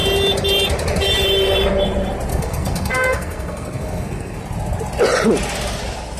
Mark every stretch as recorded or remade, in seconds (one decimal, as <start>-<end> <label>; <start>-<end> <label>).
0.0-2.3 recorded; 2.3-4.4 remade; 4.4-6.2 recorded